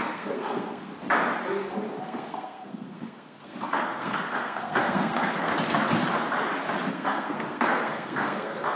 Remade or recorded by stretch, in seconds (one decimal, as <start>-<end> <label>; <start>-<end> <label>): 0.0-0.9 remade; 0.9-2.0 recorded; 2.0-5.5 remade; 5.5-6.9 recorded; 6.9-8.8 remade